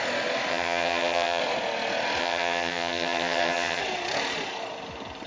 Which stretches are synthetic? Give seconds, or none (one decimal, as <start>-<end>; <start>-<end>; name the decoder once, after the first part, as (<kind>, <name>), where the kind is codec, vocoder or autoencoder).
0.5-1.4 (vocoder, HiFi-GAN); 2.2-3.8